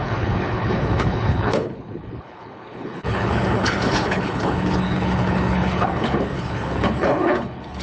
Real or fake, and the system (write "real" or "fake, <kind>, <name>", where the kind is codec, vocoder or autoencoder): fake, codec, HILCodec